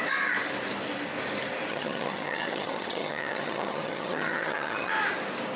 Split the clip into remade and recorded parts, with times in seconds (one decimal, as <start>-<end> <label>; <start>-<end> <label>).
0.0-1.7 recorded; 1.7-4.9 remade; 4.9-5.6 recorded